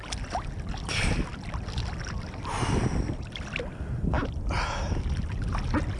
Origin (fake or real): real